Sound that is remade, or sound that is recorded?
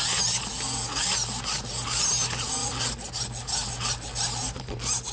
recorded